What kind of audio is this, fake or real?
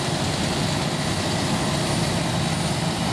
real